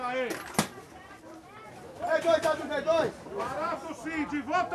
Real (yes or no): yes